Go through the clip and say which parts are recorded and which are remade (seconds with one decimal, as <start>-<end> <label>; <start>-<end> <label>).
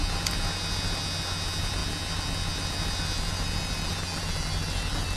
0.0-5.2 recorded